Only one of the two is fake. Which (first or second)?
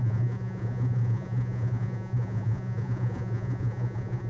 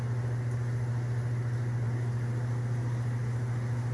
first